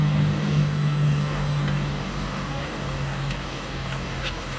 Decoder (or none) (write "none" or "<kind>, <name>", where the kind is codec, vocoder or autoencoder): codec, DAC